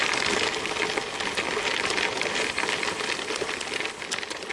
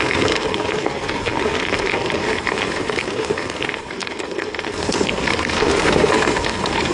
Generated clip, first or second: second